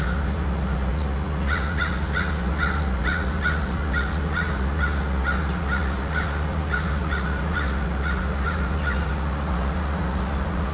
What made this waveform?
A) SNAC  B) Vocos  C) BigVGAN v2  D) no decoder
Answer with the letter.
B